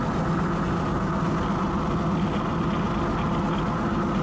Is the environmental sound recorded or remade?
recorded